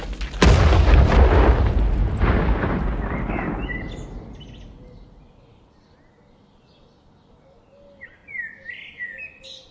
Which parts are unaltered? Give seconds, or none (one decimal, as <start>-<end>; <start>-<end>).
0.0-9.7